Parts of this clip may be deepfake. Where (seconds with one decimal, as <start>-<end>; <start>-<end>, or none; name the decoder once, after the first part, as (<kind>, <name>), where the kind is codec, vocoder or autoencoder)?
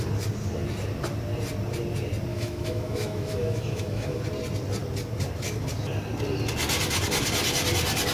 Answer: 2.3-4.2 (autoencoder, DAC-VAE)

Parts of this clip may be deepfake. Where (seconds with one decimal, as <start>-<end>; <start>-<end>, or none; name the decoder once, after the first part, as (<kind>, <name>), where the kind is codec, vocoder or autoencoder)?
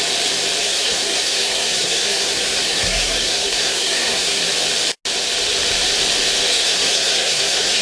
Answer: 0.6-4.4 (codec, SNAC); 6.5-7.8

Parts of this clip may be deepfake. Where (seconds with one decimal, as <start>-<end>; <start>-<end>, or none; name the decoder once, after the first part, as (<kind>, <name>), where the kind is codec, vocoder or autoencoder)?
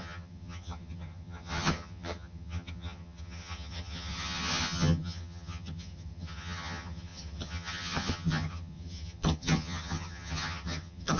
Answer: 0.0-11.2 (vocoder, HiFi-GAN)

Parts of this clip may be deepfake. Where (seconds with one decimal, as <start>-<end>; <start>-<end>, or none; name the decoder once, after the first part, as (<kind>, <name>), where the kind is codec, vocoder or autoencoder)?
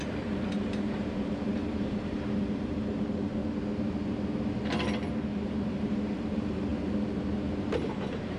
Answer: 0.0-3.4 (vocoder, BigVGAN v2); 5.4-8.4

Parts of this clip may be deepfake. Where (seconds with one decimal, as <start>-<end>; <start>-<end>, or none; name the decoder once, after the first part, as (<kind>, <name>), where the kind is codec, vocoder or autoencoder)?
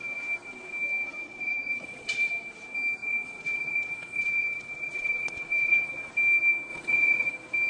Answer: 1.2-2.3 (vocoder, Vocos); 3.0-6.1; 6.7-7.3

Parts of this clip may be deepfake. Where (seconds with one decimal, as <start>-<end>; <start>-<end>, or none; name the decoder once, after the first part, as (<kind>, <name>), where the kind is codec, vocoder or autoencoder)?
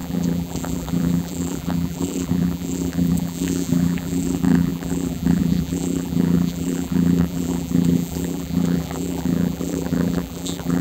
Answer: 0.0-10.8 (vocoder, BigVGAN v2)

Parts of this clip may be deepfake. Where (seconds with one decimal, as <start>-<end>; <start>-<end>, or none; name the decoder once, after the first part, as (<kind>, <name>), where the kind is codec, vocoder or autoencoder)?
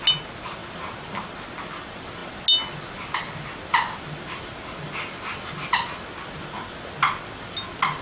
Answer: none